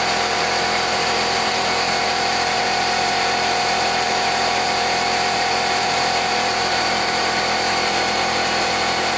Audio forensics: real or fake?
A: fake